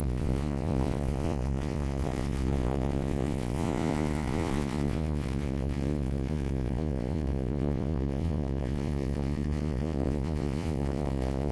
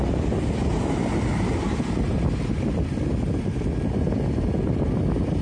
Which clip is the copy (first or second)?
first